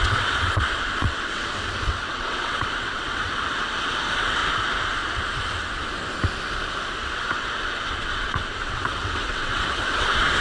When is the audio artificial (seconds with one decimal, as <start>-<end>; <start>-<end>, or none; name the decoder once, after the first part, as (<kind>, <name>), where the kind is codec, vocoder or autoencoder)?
0.0-4.4 (vocoder, WaveNeXt); 7.0-10.4